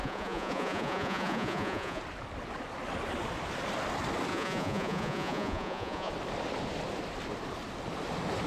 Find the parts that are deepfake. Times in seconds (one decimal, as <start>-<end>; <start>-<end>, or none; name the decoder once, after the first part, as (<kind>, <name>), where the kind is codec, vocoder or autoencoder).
0.0-2.0 (vocoder, Vocos); 4.3-6.1